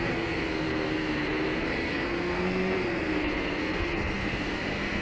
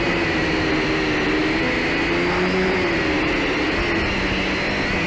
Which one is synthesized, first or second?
first